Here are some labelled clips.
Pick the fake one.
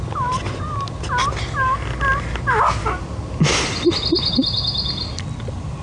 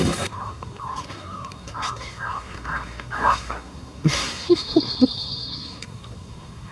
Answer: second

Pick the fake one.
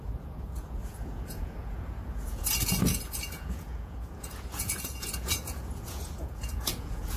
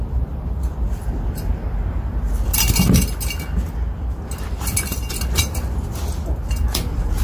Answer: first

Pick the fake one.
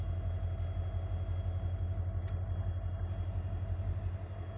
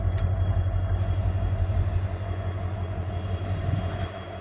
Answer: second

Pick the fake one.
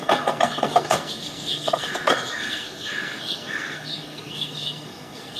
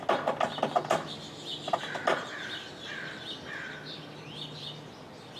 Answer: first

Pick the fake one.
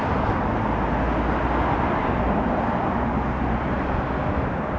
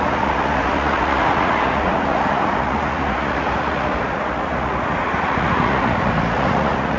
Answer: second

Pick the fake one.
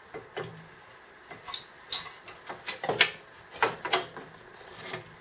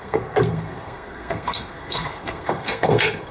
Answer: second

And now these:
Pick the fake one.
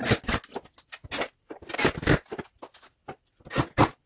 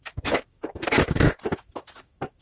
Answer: second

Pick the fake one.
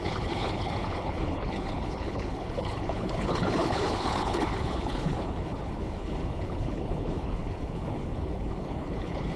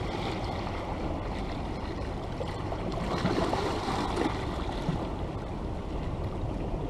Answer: first